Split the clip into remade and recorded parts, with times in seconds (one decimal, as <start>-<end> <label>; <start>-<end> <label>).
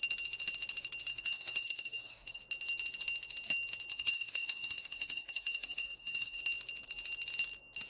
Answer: 0.0-1.1 recorded; 1.1-2.4 remade; 2.4-3.9 recorded; 3.9-6.4 remade; 6.4-7.9 recorded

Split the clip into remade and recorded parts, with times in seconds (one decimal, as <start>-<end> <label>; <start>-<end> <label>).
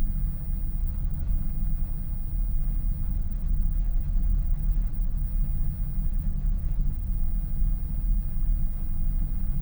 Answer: 0.0-0.8 recorded; 0.8-1.3 remade; 1.3-3.1 recorded; 3.1-5.3 remade; 5.3-6.1 recorded; 6.1-7.1 remade; 7.1-9.6 recorded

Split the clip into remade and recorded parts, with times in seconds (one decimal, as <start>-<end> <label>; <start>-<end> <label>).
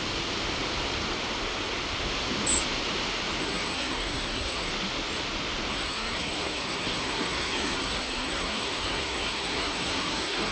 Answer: 0.0-3.4 recorded; 3.4-4.7 remade; 4.7-5.7 recorded; 5.7-10.5 remade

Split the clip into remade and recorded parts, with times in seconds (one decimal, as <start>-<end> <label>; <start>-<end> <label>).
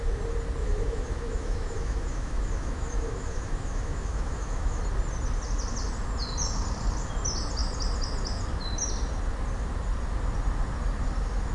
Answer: 0.0-0.6 recorded; 0.6-4.8 remade; 4.8-11.5 recorded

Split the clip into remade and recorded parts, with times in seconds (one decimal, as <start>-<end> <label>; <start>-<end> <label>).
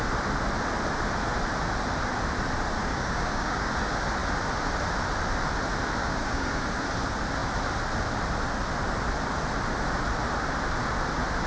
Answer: 0.0-2.8 recorded; 2.8-3.7 remade; 3.7-6.0 recorded; 6.0-6.6 remade; 6.6-11.5 recorded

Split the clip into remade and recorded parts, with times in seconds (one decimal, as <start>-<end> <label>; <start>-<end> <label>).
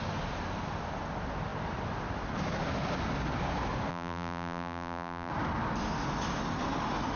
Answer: 0.0-3.9 recorded; 3.9-5.3 remade; 5.3-7.2 recorded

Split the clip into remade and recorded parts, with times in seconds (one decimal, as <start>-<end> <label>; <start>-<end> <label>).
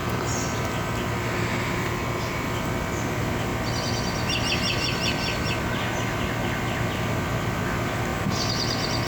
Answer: 0.0-9.1 recorded